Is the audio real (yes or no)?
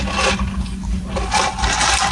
yes